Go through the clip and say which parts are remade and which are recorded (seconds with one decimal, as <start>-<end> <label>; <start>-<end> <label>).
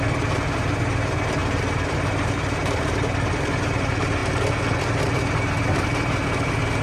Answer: 0.0-4.2 remade; 4.2-4.8 recorded; 4.8-6.8 remade